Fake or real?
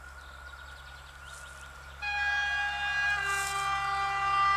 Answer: real